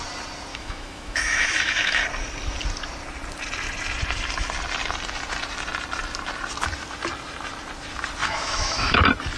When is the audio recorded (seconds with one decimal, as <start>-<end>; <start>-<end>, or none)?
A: 0.0-0.5; 2.0-8.2; 9.0-9.4